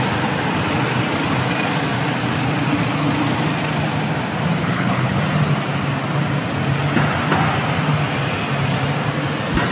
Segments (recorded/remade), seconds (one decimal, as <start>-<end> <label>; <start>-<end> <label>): 0.0-4.6 recorded; 4.6-5.2 remade; 5.2-9.7 recorded